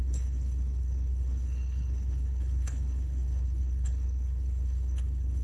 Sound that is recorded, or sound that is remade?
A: remade